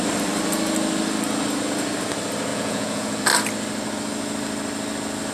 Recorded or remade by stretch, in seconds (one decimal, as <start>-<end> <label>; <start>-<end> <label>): 0.0-2.5 recorded; 2.5-3.2 remade; 3.2-5.3 recorded